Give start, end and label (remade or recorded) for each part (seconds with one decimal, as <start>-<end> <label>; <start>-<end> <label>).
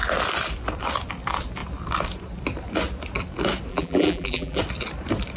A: 0.0-3.7 recorded; 3.7-4.6 remade; 4.6-5.4 recorded